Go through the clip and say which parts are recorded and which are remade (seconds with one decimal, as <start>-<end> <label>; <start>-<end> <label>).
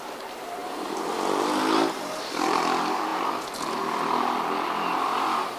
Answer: 0.0-5.6 recorded